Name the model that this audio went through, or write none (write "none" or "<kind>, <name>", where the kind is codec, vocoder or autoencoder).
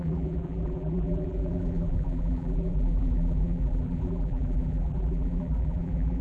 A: vocoder, BigVGAN v2